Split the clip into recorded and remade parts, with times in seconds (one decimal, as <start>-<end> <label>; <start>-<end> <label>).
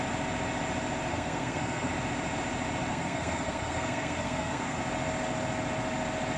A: 0.0-1.1 recorded; 1.1-1.9 remade; 1.9-2.9 recorded; 2.9-4.8 remade; 4.8-6.4 recorded